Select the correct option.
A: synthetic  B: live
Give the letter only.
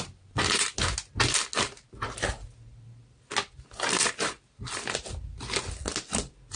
B